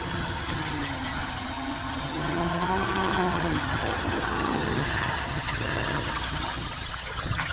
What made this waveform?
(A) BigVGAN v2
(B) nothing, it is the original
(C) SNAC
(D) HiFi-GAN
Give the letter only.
D